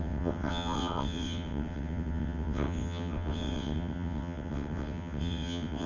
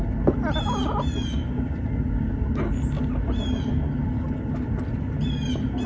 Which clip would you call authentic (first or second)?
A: second